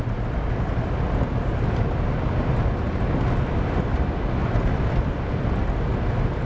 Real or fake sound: real